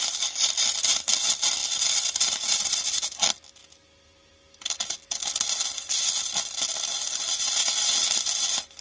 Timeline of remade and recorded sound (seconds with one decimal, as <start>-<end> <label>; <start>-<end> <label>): 0.0-8.8 recorded